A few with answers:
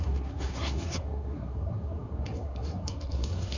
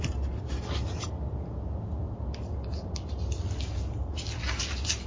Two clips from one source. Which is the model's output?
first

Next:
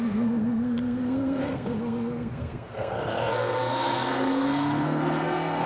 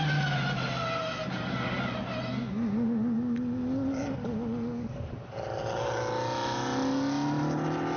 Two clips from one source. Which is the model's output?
first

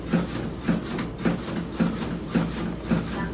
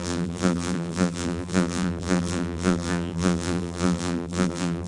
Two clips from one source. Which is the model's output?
second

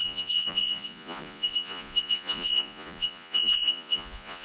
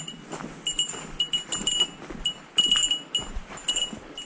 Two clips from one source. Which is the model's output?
first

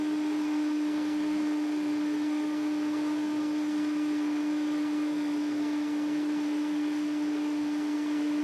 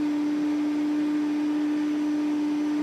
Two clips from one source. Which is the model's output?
first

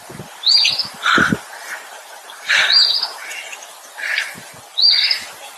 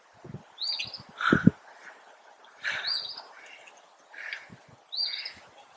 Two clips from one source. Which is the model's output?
first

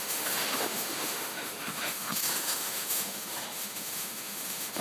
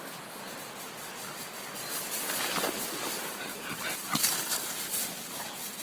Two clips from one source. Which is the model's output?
first